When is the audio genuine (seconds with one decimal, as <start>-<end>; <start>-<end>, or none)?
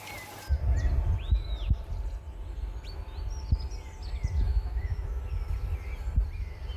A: 0.0-4.5; 5.2-6.8